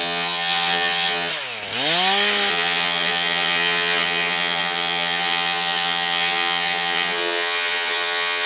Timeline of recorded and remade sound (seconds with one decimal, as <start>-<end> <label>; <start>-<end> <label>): 0.0-1.3 remade; 1.3-2.5 recorded; 2.5-8.5 remade